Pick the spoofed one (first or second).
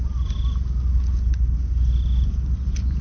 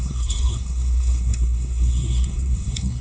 second